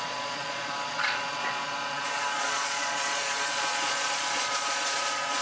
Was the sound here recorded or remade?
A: remade